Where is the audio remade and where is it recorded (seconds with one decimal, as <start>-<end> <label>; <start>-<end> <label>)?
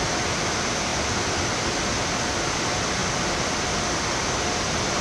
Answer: 0.0-5.0 recorded